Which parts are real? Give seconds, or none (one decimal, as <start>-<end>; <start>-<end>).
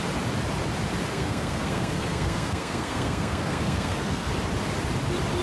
0.0-1.1; 4.3-5.4